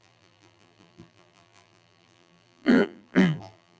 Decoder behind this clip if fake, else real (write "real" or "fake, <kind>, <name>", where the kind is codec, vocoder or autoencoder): fake, vocoder, BigVGAN v2